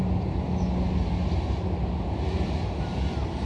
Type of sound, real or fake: real